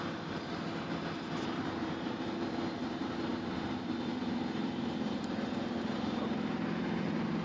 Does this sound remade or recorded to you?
remade